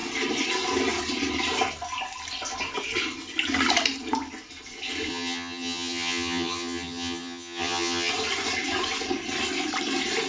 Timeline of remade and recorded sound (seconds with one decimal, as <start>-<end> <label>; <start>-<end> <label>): 0.0-5.1 recorded; 5.1-8.1 remade; 8.1-10.3 recorded